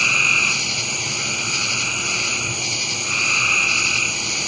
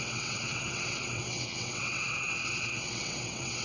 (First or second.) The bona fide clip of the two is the first